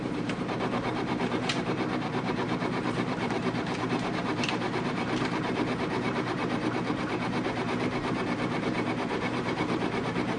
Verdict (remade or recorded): remade